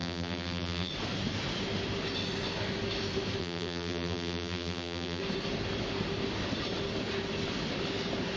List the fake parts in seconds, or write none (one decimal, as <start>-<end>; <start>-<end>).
0.0-0.9; 3.4-5.2